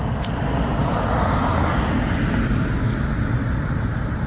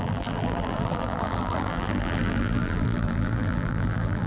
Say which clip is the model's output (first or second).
second